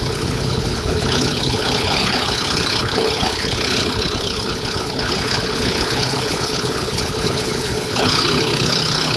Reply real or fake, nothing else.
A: fake